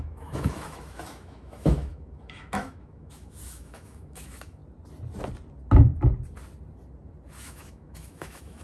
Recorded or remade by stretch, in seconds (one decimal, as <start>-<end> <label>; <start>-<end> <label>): 0.0-4.6 remade; 4.6-7.4 recorded; 7.4-8.6 remade